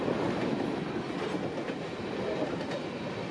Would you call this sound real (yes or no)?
yes